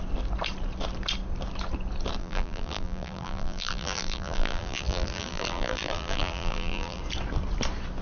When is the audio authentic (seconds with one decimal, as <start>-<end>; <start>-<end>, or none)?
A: 0.0-2.2; 7.0-8.0